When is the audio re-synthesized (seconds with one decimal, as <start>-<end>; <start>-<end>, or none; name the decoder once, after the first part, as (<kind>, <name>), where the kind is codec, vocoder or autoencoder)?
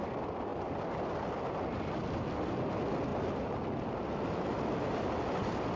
0.0-5.8 (vocoder, BigVGAN v2)